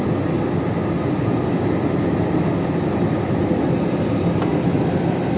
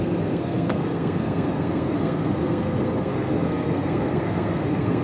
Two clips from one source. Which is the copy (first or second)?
second